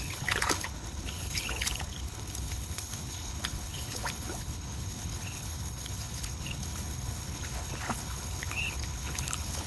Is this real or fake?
fake